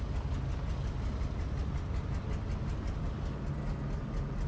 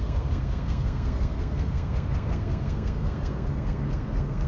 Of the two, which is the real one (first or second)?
first